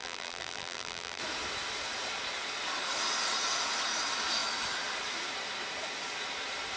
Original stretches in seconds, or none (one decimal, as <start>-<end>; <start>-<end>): 1.2-6.8